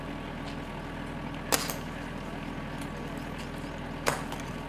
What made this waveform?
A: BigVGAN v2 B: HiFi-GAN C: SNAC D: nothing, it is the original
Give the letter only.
D